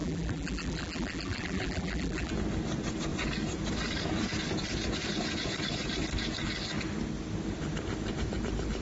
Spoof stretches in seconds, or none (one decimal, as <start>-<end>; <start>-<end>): 0.0-2.3